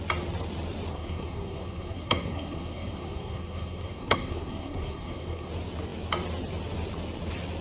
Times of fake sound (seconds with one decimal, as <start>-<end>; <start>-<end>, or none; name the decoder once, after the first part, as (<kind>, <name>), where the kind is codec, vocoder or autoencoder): 0.9-5.5 (codec, SNAC)